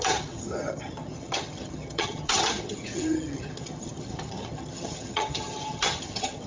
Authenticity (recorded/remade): remade